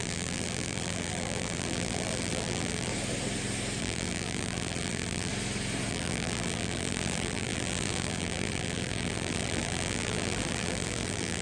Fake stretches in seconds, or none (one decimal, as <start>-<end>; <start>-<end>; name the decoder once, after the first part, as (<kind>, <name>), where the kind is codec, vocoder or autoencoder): 0.0-2.9 (vocoder, BigVGAN v2); 3.8-5.3; 5.9-11.4